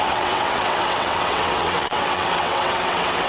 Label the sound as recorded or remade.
remade